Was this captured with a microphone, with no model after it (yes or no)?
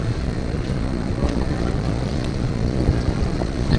no